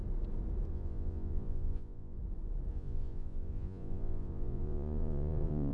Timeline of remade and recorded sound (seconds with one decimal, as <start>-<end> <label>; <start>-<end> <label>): 0.0-0.7 recorded; 0.7-2.2 remade; 2.2-2.7 recorded; 2.7-5.7 remade